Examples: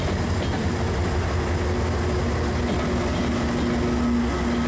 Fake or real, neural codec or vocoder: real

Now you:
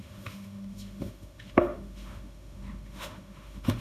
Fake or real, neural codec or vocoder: fake, autoencoder, DAC-VAE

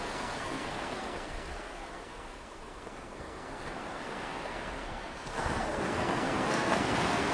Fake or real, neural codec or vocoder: fake, codec, SNAC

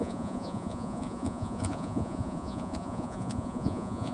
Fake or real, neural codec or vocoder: fake, vocoder, Vocos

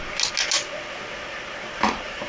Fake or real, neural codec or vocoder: real